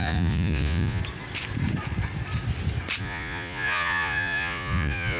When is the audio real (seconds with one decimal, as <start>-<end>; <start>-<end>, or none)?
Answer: 1.0-3.0